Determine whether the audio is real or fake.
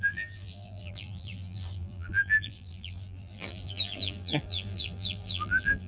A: fake